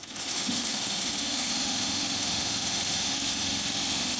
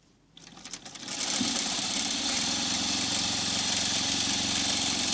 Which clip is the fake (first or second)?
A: first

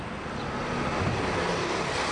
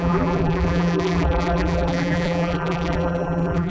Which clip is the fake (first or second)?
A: second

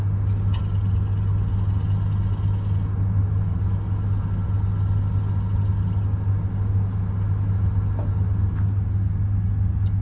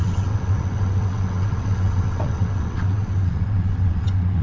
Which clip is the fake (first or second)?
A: second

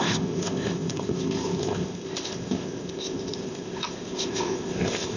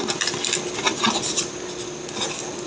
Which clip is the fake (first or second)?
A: first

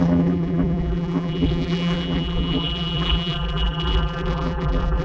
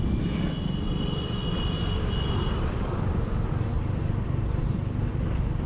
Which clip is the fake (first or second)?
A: first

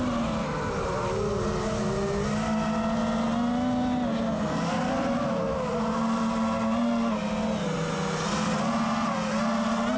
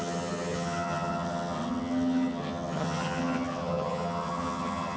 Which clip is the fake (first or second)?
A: second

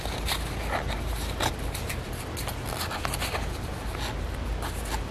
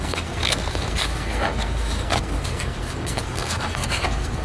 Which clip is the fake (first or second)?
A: second